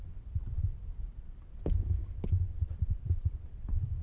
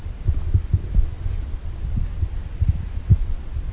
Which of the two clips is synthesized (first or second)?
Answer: first